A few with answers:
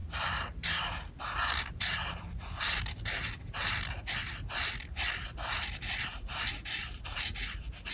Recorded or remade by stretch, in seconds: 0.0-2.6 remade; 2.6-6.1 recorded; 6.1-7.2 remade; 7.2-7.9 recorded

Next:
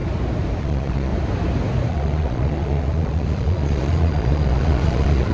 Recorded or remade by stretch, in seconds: 0.0-0.6 recorded; 0.6-1.1 remade; 1.1-1.9 recorded; 1.9-5.3 remade

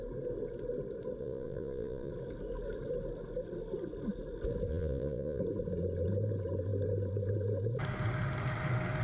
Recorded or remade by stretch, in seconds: 0.0-1.2 recorded; 1.2-2.1 remade; 2.1-4.7 recorded; 4.7-5.4 remade; 5.4-9.0 recorded

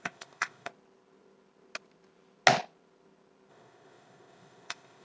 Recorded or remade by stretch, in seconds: 0.0-0.7 remade; 0.7-3.5 recorded; 3.5-5.0 remade